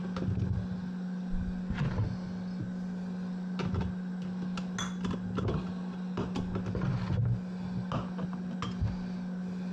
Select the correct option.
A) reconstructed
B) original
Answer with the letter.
B